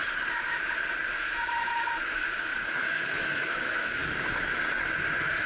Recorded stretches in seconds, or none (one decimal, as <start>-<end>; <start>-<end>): 0.0-1.1; 4.0-5.5